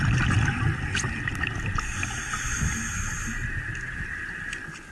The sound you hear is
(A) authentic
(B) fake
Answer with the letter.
A